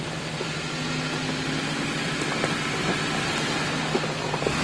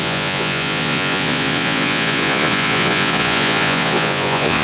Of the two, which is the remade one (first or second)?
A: second